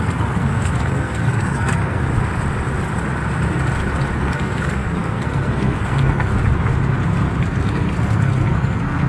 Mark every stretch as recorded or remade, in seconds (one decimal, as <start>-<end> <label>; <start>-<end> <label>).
0.0-2.0 remade; 2.0-4.2 recorded; 4.2-6.3 remade; 6.3-7.4 recorded; 7.4-9.1 remade

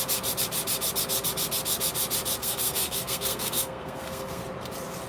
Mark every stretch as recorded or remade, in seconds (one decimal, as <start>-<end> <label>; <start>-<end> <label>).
0.0-2.4 recorded; 2.4-4.4 remade; 4.4-5.1 recorded